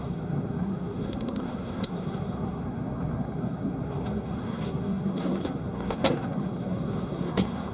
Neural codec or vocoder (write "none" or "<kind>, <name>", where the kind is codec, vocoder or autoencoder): codec, SNAC